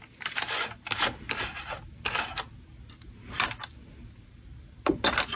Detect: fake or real real